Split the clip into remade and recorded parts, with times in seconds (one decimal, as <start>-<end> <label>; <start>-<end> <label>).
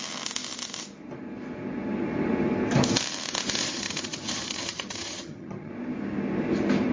0.0-3.6 recorded; 3.6-5.7 remade; 5.7-6.9 recorded